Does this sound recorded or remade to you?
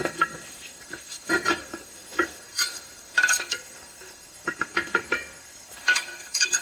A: remade